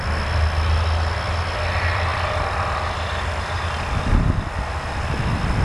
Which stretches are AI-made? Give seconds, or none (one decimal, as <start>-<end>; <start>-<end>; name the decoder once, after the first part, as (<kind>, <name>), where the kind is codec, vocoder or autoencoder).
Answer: none